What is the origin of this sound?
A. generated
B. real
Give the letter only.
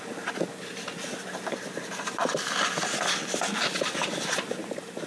B